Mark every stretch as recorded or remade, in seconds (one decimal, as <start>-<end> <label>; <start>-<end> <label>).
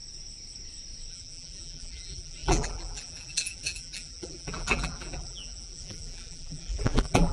0.0-1.1 recorded; 1.1-7.3 remade